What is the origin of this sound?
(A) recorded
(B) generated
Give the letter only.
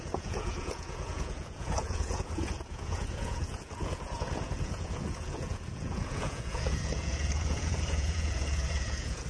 B